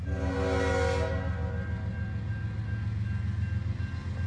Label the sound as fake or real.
real